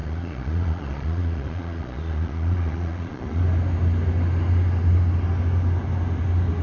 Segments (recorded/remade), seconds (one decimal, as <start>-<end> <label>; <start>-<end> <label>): 0.0-3.4 remade; 3.4-6.6 recorded

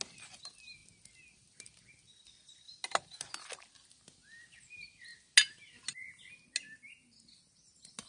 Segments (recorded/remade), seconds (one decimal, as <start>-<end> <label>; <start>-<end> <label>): 0.0-8.1 recorded

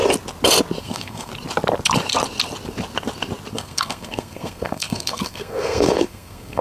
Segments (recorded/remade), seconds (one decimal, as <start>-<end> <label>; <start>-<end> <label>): 0.0-0.8 recorded; 0.8-1.3 remade; 1.3-3.5 recorded; 3.5-6.6 remade